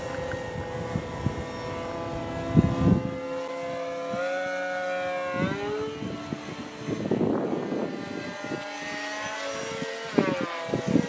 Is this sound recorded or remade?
recorded